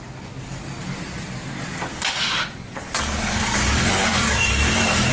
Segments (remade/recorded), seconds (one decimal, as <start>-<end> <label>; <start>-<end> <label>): 0.0-1.9 recorded; 1.9-5.1 remade